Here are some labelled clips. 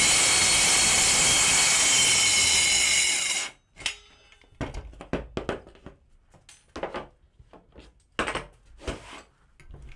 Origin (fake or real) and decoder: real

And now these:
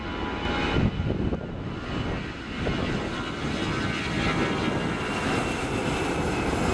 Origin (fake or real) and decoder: real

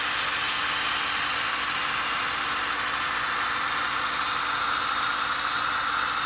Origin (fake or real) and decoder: real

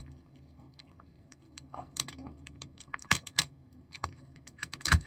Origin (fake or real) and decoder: fake, codec, SNAC